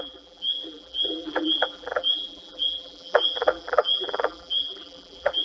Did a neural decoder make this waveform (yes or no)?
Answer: yes